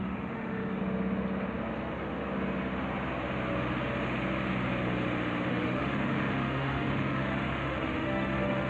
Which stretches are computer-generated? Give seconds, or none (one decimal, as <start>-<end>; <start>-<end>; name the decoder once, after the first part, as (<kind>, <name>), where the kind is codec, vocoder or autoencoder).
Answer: 0.0-0.8 (autoencoder, DAC-VAE); 5.5-8.7